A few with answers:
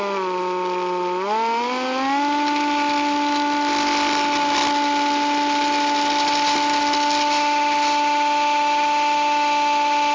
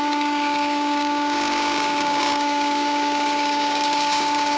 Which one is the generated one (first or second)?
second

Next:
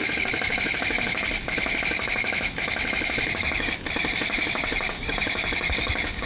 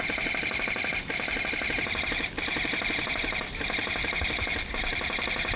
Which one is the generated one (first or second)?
first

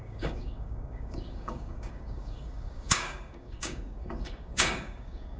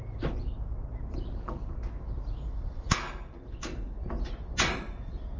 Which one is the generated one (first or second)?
first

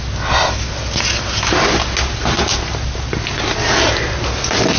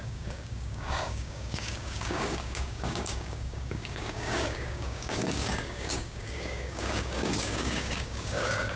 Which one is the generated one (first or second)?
second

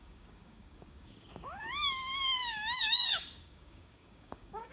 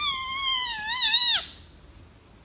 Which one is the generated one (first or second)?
first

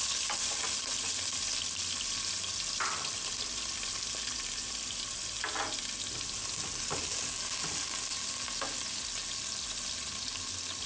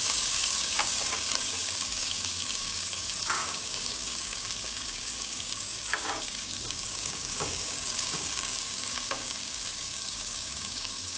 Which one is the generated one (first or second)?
second